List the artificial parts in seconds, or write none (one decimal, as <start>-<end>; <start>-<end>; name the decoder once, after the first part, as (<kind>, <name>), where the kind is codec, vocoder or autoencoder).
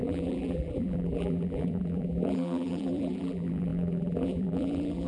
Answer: 0.0-5.1 (vocoder, BigVGAN v2)